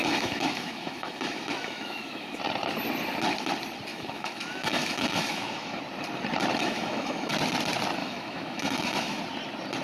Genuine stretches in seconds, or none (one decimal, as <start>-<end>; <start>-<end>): 2.4-3.9; 5.8-6.6; 7.3-8.0; 9.2-9.8